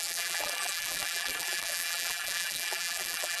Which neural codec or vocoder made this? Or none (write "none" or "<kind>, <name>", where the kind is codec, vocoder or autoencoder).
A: vocoder, BigVGAN v2